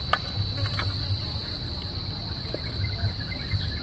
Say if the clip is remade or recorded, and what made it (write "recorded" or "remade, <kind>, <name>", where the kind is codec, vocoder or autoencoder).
recorded